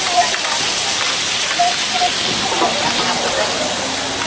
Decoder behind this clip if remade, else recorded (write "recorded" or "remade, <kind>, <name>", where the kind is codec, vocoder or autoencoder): recorded